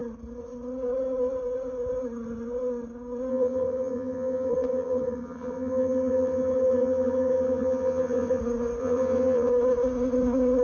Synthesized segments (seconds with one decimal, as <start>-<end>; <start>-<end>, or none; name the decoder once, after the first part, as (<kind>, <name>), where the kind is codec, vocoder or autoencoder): 3.3-8.4 (vocoder, HiFi-GAN); 8.8-9.5